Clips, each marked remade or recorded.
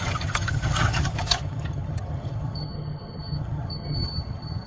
remade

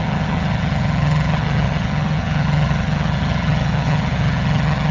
remade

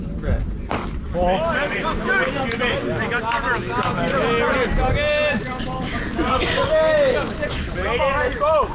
recorded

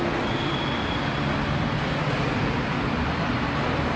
recorded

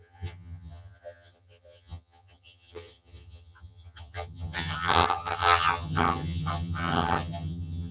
remade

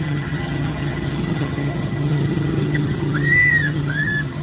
remade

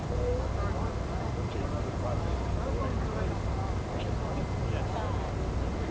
recorded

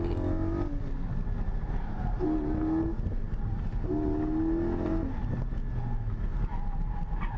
recorded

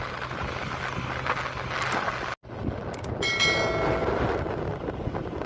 recorded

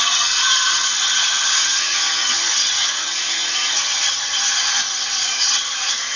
remade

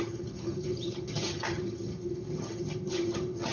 remade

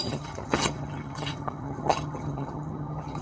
remade